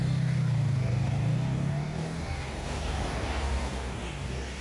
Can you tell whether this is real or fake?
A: fake